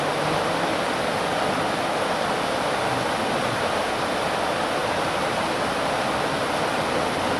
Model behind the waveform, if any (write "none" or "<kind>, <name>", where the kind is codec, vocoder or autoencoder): none